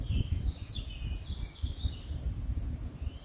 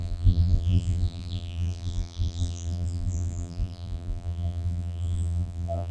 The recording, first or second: first